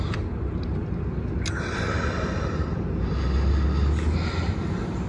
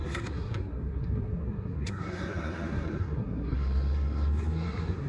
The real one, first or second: first